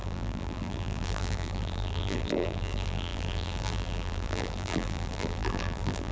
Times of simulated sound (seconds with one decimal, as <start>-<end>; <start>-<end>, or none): 0.0-6.1